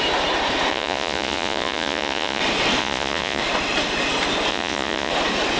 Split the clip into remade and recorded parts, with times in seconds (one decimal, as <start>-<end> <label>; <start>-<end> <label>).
0.0-0.7 recorded; 0.7-2.4 remade; 2.4-2.8 recorded; 2.8-3.4 remade; 3.4-4.5 recorded; 4.5-5.1 remade; 5.1-5.6 recorded